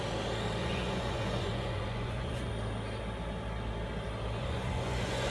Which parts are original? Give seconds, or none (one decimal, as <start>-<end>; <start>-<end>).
0.0-0.6; 2.5-4.4